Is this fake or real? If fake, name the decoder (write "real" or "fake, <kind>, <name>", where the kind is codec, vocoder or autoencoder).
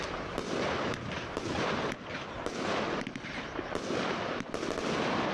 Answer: real